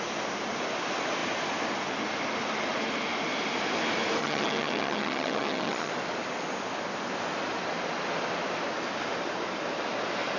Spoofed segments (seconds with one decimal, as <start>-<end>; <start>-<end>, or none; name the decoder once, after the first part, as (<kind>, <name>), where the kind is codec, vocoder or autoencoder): 4.2-5.9 (vocoder, HiFi-GAN)